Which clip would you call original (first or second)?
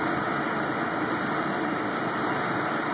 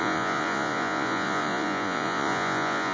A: first